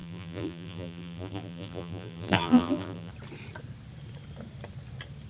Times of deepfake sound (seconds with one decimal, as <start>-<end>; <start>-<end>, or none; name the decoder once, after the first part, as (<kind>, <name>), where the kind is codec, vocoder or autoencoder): 0.0-3.1 (vocoder, BigVGAN v2)